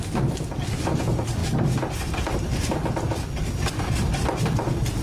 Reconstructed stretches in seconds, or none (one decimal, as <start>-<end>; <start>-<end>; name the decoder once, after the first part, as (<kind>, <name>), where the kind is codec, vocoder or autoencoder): none